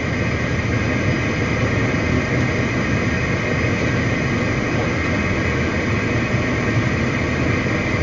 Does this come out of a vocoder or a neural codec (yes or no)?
no